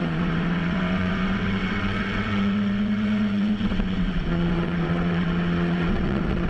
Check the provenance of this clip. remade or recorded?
remade